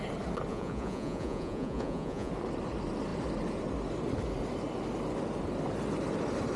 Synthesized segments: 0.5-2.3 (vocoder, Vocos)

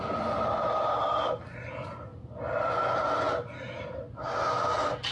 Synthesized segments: none

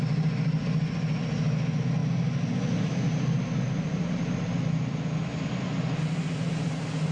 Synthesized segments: none

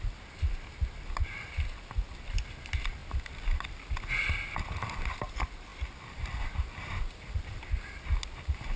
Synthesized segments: none